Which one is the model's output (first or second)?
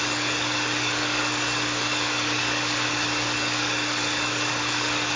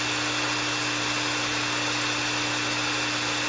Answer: first